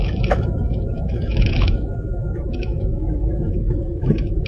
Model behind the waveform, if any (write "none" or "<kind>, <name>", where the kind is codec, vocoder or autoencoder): autoencoder, DAC-VAE